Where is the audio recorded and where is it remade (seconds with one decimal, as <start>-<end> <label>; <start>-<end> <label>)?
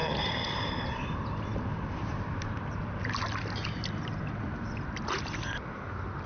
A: 0.0-0.8 remade; 0.8-6.3 recorded